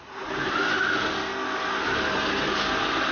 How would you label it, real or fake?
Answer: real